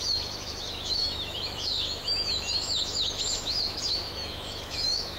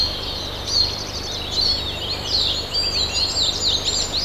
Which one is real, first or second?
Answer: second